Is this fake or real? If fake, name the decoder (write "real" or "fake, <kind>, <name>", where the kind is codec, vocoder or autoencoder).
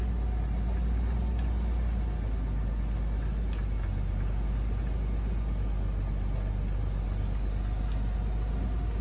real